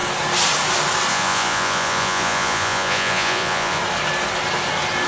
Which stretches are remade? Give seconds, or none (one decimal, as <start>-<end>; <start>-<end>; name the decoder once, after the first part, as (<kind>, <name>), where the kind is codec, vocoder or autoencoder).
1.1-3.8 (vocoder, Vocos)